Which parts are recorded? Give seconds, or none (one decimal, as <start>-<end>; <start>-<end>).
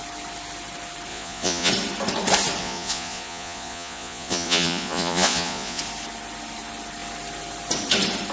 0.0-1.1; 1.7-2.6; 5.8-8.3